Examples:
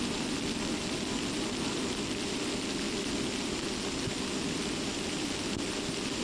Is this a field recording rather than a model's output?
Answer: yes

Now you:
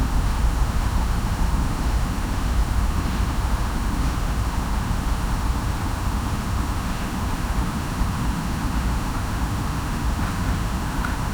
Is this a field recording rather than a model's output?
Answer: no